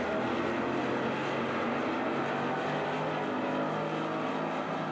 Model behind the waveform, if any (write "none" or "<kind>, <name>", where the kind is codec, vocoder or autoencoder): none